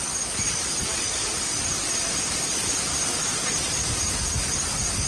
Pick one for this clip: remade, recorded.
recorded